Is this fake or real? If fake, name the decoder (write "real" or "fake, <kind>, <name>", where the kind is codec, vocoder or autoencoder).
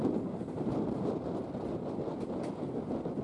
real